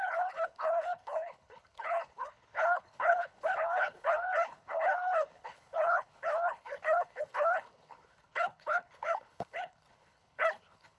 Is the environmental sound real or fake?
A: fake